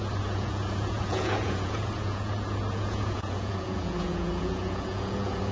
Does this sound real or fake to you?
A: fake